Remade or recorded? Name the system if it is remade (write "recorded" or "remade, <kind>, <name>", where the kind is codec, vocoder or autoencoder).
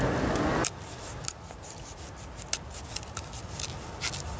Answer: recorded